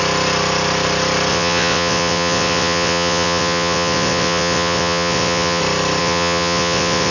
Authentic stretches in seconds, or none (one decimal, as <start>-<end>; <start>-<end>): 0.0-1.3; 5.6-6.0